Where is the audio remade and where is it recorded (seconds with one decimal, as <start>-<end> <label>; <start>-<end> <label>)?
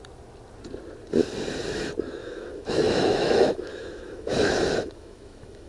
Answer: 0.0-2.2 recorded; 2.2-5.7 remade